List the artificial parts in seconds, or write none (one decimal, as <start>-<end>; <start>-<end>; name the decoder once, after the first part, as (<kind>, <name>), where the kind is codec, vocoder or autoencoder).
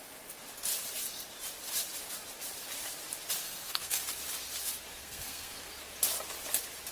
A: 3.4-4.0 (codec, SNAC); 5.0-5.7